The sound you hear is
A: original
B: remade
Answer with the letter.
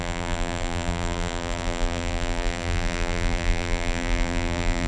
B